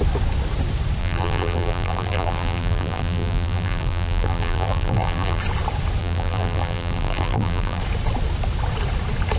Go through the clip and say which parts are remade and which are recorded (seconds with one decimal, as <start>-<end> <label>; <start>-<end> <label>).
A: 0.0-1.0 recorded; 1.0-5.4 remade; 5.4-6.0 recorded; 6.0-7.8 remade; 7.8-9.4 recorded